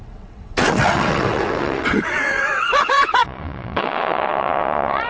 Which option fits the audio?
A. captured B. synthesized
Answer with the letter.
B